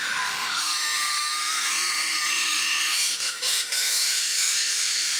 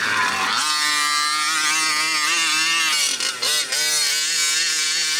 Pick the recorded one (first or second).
second